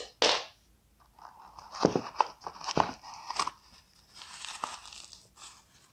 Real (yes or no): yes